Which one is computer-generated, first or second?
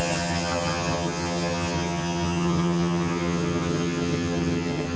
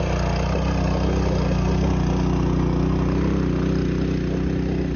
first